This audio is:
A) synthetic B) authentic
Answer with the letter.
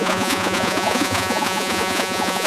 A